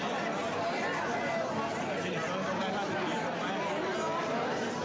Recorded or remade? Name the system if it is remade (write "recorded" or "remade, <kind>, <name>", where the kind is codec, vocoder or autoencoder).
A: recorded